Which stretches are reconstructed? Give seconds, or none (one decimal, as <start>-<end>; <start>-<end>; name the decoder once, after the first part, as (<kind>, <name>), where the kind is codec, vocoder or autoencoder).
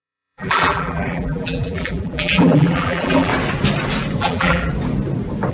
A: 0.0-3.3 (vocoder, BigVGAN v2); 4.2-4.7